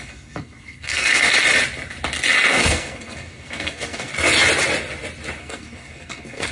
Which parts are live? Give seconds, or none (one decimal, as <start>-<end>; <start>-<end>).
1.3-2.5; 4.1-5.4